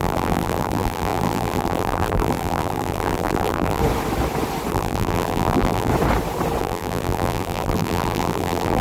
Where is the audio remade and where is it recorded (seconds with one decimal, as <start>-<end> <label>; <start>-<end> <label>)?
0.0-3.8 remade; 3.8-4.7 recorded; 4.7-5.9 remade; 5.9-6.6 recorded; 6.6-8.8 remade